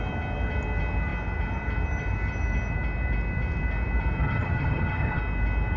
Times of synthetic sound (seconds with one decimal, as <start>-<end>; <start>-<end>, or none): 4.2-5.2